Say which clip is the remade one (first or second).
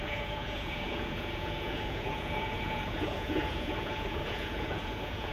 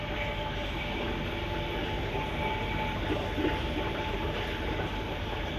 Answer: first